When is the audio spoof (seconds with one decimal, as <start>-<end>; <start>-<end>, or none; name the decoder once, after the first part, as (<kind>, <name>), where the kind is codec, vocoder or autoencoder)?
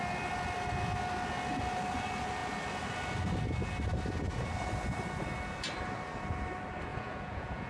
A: 6.9-7.7 (vocoder, Vocos)